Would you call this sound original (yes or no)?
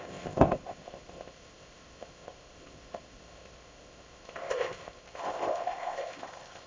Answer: no